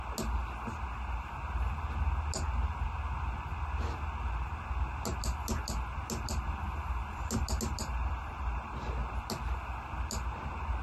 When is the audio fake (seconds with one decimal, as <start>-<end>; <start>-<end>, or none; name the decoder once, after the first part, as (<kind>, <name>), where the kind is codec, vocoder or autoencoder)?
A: none